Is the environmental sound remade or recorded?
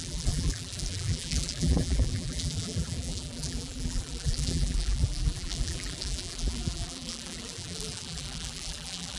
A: remade